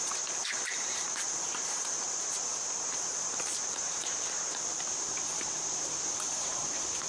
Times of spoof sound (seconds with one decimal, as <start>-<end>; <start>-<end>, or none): 0.0-7.1